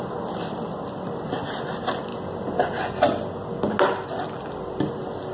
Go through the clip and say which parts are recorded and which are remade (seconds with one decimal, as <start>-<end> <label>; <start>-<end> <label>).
0.0-5.3 recorded